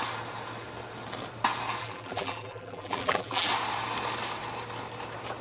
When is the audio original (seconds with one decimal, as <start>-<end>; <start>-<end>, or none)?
0.0-1.8; 3.5-5.4